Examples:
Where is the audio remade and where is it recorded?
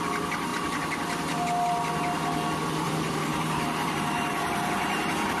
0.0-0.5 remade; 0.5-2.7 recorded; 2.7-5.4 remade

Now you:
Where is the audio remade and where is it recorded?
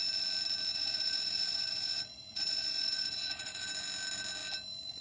0.0-0.7 recorded; 0.7-3.7 remade; 3.7-5.0 recorded